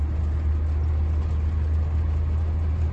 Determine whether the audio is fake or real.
real